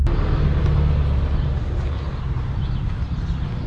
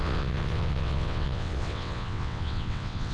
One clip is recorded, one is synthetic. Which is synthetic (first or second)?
second